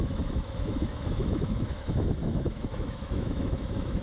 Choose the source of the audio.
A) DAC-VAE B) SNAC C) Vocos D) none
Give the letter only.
A